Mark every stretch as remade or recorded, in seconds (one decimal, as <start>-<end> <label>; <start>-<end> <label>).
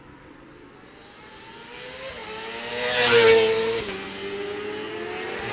0.0-5.5 recorded